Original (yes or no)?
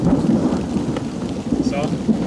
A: yes